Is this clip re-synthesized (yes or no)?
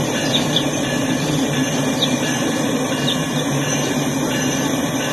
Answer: yes